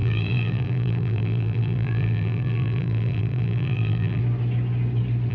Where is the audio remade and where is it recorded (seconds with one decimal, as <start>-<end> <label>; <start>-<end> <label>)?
0.0-4.2 remade; 4.2-5.3 recorded